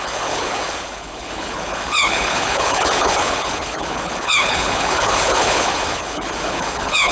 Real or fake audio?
fake